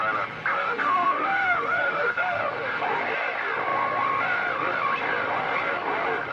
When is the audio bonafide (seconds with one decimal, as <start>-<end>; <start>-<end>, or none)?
0.0-0.5; 2.4-6.3